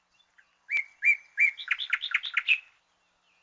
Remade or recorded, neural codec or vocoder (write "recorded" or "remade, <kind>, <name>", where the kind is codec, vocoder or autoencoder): recorded